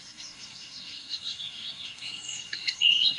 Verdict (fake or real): fake